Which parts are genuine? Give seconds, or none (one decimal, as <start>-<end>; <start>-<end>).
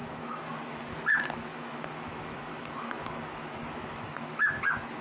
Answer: 0.8-1.5; 4.5-5.0